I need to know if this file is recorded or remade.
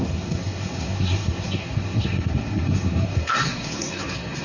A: remade